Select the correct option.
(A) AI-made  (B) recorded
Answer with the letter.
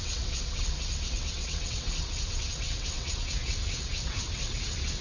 A